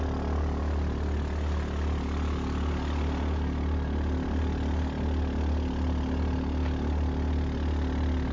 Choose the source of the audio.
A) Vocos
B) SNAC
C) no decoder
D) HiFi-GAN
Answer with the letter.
C